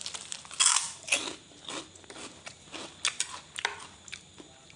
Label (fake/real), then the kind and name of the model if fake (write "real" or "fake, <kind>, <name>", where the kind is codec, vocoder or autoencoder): real